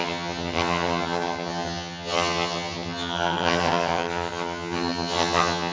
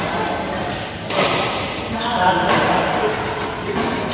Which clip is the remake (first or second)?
first